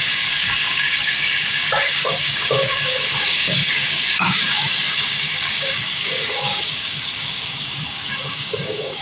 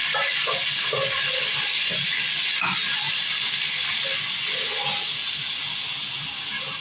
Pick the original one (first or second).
second